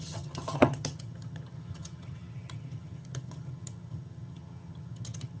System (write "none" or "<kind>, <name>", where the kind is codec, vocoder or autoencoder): vocoder, HiFi-GAN